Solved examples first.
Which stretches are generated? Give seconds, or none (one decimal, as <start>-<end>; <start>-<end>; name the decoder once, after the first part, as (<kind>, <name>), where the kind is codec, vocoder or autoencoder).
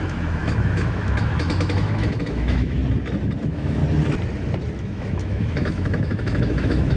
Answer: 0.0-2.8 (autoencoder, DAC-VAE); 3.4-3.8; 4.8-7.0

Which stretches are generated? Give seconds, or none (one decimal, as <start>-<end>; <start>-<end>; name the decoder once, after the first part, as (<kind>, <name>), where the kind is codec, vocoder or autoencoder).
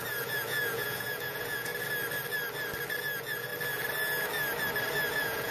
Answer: 0.0-1.7 (vocoder, Vocos); 3.0-3.5; 5.1-5.5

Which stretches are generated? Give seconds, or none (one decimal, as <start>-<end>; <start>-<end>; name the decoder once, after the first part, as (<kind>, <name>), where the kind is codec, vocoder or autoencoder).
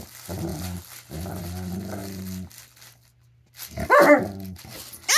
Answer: none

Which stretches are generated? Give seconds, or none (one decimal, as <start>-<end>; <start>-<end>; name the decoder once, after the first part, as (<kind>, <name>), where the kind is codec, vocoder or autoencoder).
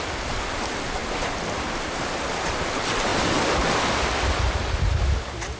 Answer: none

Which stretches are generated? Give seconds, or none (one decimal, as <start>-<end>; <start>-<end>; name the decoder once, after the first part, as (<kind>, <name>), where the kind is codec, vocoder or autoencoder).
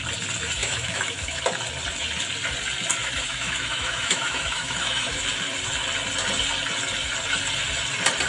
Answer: 0.6-1.4 (autoencoder, DAC-VAE); 3.0-5.2